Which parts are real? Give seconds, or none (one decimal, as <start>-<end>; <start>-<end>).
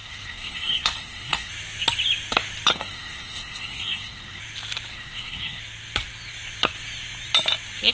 1.5-2.7; 4.4-4.9; 5.6-7.9